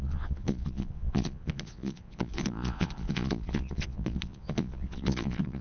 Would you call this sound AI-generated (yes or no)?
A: yes